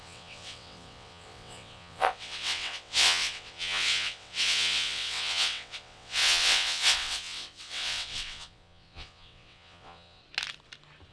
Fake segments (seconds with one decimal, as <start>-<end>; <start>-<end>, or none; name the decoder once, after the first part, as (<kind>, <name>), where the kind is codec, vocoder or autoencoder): 0.0-10.2 (vocoder, WaveNeXt)